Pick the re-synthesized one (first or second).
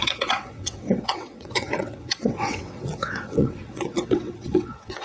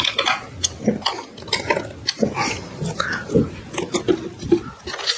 first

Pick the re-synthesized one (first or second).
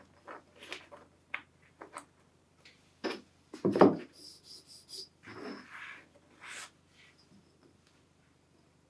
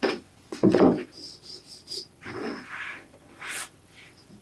second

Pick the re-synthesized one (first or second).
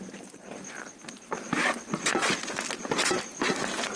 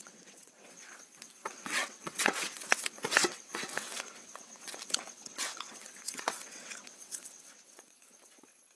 second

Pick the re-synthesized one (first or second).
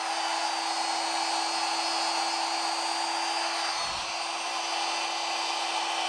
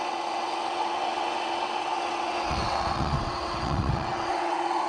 second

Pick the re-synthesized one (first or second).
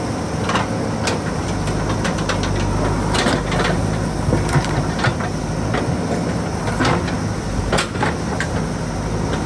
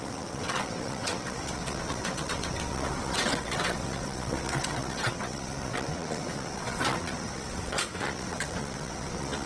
second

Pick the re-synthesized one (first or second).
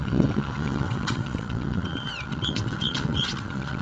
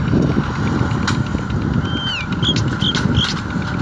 first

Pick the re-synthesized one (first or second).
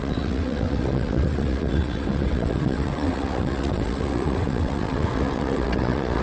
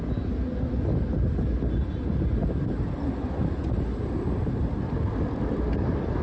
first